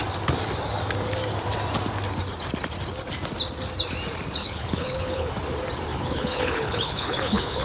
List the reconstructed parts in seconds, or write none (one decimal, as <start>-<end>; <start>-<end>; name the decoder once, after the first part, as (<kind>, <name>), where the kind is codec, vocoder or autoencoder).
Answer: 4.4-5.3 (codec, HILCodec); 5.9-7.6